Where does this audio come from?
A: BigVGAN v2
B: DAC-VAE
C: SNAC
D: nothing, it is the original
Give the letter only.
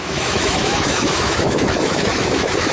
B